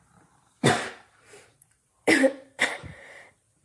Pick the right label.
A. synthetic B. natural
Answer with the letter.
A